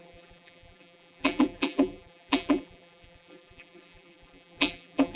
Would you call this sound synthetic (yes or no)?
yes